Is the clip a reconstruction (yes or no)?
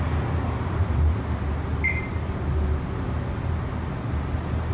no